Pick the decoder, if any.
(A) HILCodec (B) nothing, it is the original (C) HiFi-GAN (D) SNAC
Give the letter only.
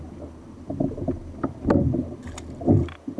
B